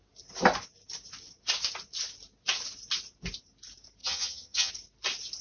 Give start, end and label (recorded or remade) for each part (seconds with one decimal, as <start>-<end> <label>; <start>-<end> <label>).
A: 0.0-4.0 recorded; 4.0-4.7 remade; 4.7-5.4 recorded